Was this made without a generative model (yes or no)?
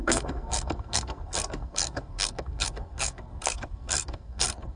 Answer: no